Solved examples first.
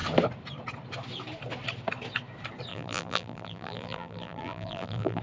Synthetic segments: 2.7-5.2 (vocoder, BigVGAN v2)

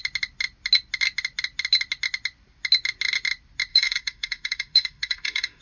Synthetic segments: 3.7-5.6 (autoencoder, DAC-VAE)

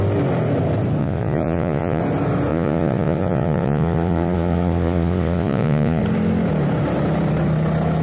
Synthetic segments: 1.0-2.0 (vocoder, Vocos); 2.5-6.0

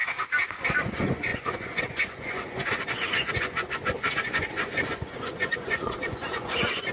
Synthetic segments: 0.8-6.9 (vocoder, Vocos)

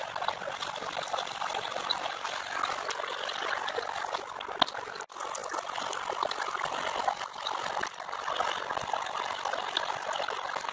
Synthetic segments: none